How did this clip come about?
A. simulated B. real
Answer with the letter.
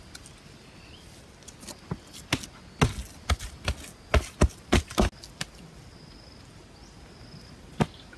B